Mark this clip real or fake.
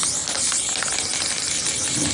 real